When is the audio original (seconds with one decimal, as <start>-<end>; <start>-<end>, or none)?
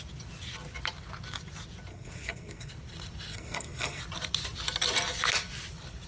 0.0-1.9; 2.7-3.3; 4.0-6.1